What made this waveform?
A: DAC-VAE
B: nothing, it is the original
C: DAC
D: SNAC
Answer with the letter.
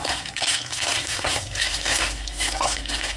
D